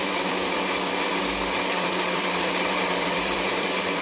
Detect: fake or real fake